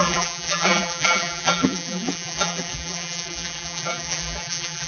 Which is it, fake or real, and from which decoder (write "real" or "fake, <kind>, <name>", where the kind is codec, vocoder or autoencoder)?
fake, vocoder, BigVGAN v2